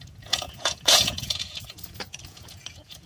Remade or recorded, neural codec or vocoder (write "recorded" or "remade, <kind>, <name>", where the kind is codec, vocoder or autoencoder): remade, vocoder, Vocos